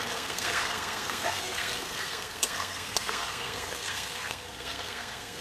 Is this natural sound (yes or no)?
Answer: no